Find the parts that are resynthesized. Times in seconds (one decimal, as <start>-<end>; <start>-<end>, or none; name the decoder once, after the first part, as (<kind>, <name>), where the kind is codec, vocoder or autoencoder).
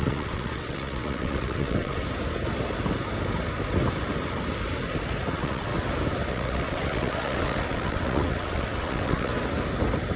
0.0-2.0 (vocoder, WaveNeXt); 5.3-5.7; 6.3-9.3